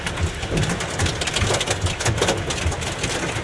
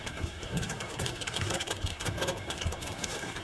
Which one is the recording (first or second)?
first